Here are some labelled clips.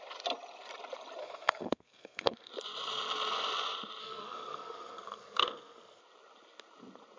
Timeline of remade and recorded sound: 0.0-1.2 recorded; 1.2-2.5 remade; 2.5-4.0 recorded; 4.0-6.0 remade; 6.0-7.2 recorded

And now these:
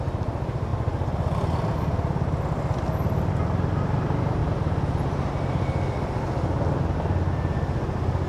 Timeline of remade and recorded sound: 0.0-8.3 recorded

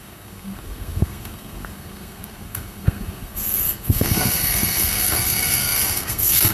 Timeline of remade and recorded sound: 0.0-6.5 remade